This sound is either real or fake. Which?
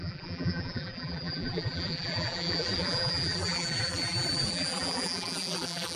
fake